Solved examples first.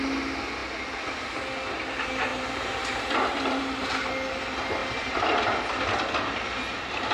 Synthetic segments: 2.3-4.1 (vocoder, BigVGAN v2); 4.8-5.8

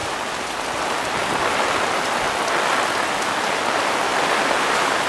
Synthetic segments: 4.1-5.1 (vocoder, BigVGAN v2)

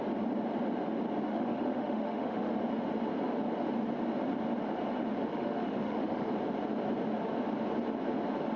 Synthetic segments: 1.3-2.5 (autoencoder, DAC-VAE); 5.3-6.3

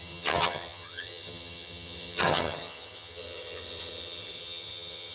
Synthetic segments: 0.0-5.1 (vocoder, HiFi-GAN)

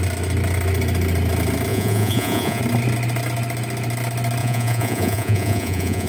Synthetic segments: 1.7-2.6 (vocoder, Vocos); 4.4-6.1

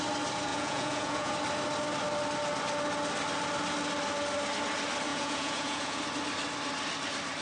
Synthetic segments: 0.5-1.3 (vocoder, Vocos); 5.1-6.0